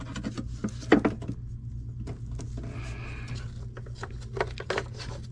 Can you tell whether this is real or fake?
real